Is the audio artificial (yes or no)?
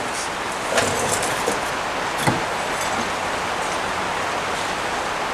no